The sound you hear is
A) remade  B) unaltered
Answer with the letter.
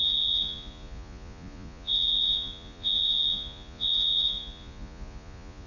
A